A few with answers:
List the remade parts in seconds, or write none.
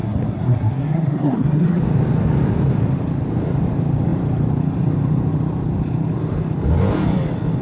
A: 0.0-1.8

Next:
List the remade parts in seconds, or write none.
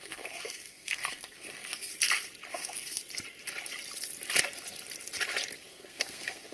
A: 0.0-1.9; 2.5-3.0; 5.7-6.5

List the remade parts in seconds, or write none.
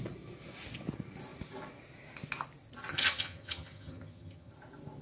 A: 2.9-4.5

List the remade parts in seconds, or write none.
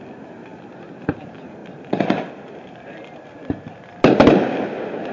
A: none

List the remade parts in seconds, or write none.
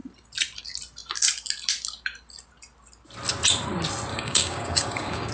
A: 4.1-5.3